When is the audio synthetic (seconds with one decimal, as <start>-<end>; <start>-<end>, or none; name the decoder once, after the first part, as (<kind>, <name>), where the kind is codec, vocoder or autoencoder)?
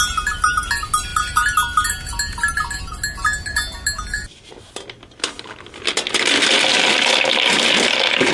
none